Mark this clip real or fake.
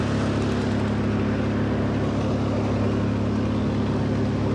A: real